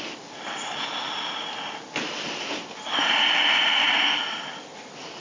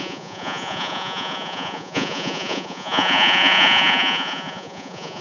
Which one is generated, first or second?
second